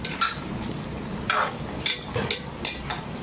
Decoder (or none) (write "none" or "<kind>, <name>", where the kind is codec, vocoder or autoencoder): none